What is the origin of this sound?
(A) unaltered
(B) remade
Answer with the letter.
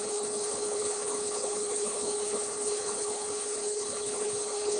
B